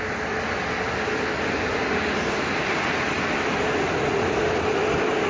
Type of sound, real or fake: real